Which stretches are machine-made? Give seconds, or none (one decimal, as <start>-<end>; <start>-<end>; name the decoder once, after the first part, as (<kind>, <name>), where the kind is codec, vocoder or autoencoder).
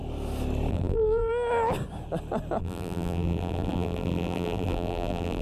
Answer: 0.7-1.3 (vocoder, BigVGAN v2); 2.6-5.4